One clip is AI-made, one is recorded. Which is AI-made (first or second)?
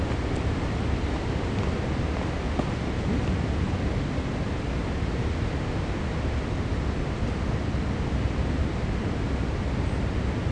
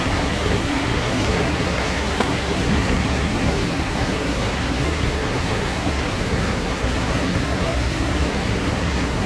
second